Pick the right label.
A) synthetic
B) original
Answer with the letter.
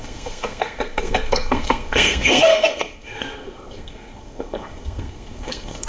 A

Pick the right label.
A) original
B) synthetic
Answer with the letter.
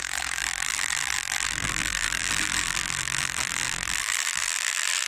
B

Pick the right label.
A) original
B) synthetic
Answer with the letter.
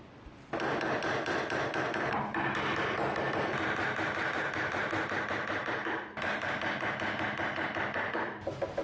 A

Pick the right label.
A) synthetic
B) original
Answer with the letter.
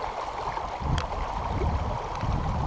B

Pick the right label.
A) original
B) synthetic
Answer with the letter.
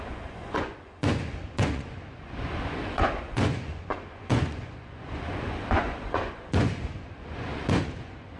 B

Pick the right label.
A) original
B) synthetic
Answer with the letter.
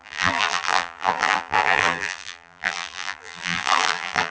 B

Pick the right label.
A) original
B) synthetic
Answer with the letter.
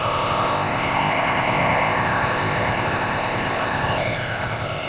B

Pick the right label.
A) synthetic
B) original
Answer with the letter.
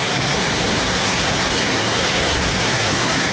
A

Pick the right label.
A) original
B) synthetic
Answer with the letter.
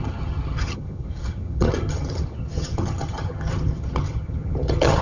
B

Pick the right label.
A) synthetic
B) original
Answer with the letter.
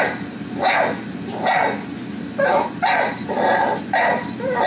B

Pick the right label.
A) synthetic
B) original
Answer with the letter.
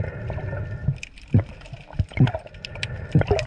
B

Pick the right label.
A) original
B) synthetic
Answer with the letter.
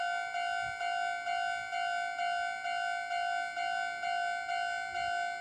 A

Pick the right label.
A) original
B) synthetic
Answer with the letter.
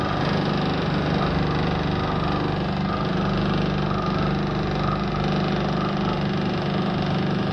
A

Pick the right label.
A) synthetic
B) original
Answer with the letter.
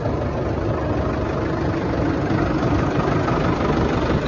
B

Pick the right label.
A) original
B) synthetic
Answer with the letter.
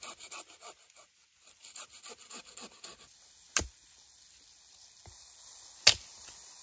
A